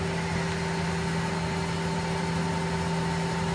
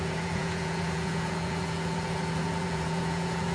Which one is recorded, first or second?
first